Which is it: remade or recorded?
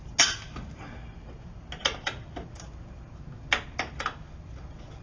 recorded